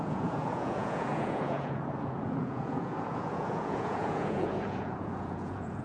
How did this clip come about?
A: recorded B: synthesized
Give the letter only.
B